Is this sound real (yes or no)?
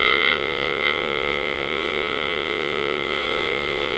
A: no